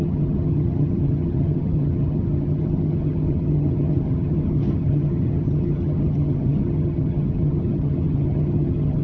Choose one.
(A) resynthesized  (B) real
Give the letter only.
A